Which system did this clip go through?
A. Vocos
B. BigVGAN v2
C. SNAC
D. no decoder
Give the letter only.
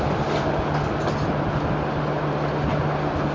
D